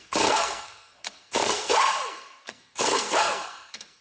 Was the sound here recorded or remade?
remade